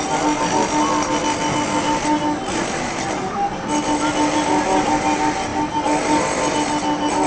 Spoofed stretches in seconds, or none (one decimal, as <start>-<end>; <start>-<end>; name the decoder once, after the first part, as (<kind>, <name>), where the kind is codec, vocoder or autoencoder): none